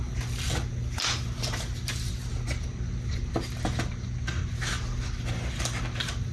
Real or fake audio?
real